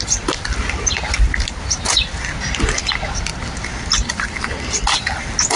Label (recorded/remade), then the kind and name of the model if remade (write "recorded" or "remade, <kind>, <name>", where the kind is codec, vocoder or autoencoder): recorded